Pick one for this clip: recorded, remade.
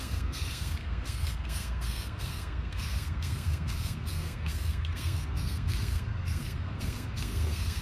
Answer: remade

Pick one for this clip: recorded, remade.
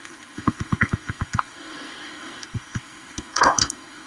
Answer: remade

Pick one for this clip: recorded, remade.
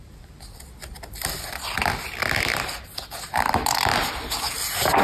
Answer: recorded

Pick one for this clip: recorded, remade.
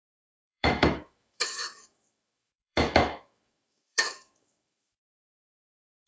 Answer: remade